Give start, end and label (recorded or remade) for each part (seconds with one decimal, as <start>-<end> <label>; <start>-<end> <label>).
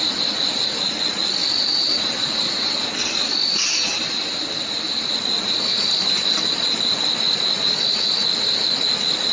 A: 0.0-9.3 recorded